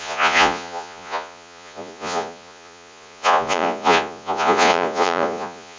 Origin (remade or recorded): remade